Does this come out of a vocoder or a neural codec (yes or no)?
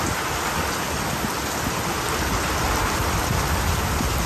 no